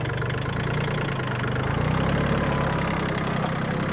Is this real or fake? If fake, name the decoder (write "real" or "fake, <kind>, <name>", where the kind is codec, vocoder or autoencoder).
real